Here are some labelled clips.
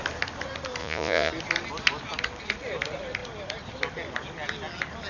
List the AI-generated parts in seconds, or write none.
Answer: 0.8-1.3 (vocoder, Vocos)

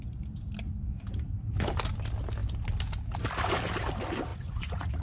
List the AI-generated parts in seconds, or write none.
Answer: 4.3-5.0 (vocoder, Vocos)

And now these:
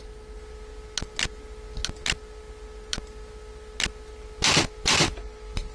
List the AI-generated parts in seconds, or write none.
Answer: none

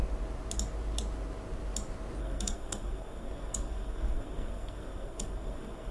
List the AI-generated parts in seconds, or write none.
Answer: 2.2-5.9 (codec, SNAC)

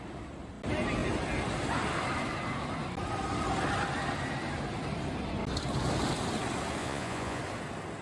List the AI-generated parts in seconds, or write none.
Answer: 6.8-7.4 (vocoder, Vocos)

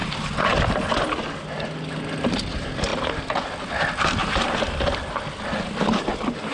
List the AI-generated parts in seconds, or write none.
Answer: 4.2-4.7 (vocoder, BigVGAN v2)